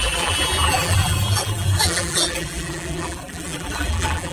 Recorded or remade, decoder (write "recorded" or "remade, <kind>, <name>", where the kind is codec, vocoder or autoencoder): remade, vocoder, BigVGAN v2